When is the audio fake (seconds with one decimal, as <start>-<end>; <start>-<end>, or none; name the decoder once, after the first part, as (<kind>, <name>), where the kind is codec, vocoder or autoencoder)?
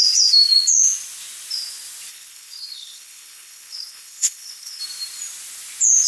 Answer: 2.1-4.8 (codec, HILCodec)